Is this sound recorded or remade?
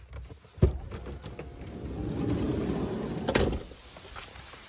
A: recorded